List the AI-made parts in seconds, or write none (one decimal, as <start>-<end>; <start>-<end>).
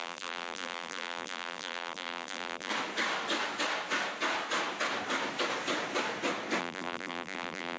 0.0-2.7; 6.6-7.8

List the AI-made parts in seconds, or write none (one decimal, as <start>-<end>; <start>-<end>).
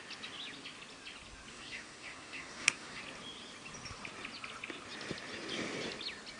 1.5-3.0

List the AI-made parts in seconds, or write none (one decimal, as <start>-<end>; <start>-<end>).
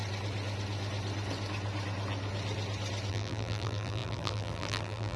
3.1-5.2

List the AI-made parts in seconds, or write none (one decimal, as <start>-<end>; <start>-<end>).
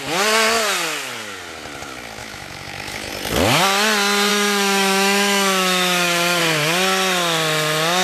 2.2-3.1; 4.3-6.4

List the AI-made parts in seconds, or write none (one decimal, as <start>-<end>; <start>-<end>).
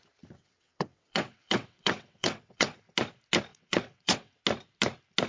0.4-2.8; 3.5-4.4